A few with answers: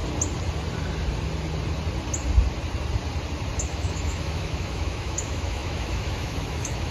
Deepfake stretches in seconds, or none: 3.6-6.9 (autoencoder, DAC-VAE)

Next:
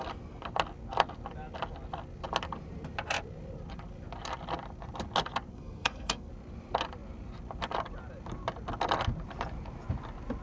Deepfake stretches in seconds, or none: 5.5-6.3 (codec, SNAC)

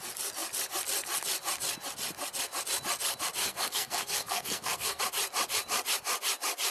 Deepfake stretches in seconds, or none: 3.4-5.0 (codec, SNAC)

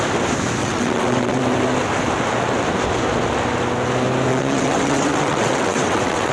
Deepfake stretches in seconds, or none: 0.6-1.4 (vocoder, WaveNeXt); 4.3-6.3

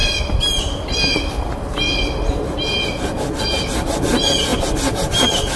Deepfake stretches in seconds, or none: none

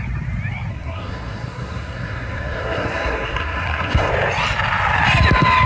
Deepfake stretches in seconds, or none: 0.7-4.1 (codec, SNAC)